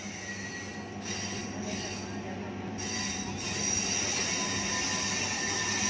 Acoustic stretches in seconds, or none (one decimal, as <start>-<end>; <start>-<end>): 0.0-5.9